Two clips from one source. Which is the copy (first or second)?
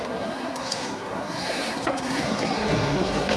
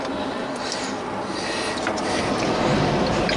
first